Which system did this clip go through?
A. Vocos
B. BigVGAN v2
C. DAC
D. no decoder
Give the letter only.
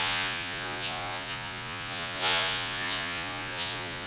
A